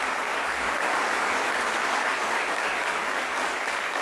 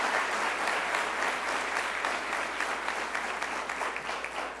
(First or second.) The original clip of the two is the second